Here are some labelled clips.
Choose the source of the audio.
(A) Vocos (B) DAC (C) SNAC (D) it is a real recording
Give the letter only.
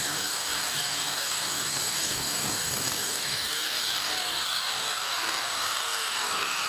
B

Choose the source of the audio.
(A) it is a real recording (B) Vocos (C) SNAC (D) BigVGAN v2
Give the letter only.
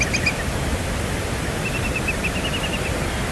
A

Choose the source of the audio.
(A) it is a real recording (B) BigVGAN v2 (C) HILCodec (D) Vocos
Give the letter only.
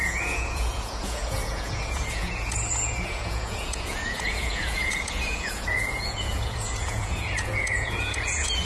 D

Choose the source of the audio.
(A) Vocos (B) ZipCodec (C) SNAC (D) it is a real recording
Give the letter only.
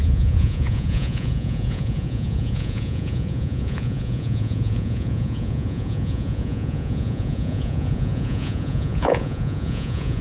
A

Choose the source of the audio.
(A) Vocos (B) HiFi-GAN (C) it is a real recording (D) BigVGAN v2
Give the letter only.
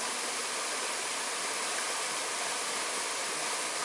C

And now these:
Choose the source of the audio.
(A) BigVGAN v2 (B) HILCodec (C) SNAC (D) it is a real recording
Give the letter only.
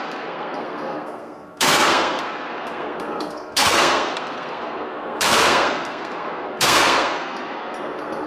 C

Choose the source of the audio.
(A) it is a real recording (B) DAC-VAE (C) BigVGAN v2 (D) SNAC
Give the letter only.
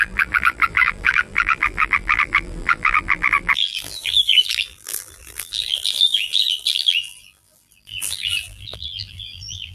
C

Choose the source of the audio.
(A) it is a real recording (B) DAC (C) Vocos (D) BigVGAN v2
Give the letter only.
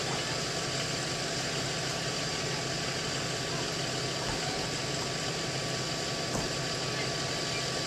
A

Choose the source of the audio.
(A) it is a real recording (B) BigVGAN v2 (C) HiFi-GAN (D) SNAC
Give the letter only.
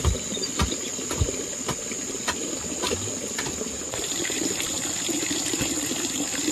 A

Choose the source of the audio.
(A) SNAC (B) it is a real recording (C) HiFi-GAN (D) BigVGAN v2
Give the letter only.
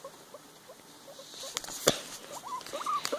B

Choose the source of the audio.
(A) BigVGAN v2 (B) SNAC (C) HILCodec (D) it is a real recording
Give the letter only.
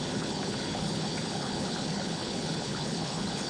C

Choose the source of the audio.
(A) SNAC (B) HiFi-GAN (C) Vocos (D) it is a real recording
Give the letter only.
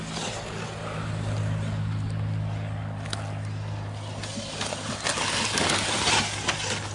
D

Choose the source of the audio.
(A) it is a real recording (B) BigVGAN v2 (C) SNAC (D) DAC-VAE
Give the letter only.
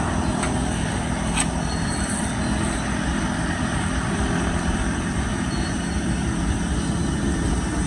A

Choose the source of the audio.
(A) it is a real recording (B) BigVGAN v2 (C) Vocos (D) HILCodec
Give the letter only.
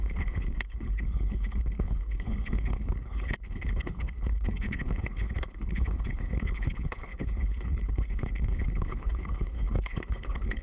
D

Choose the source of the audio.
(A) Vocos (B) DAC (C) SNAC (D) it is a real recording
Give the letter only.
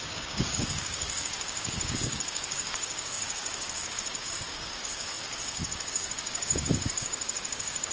B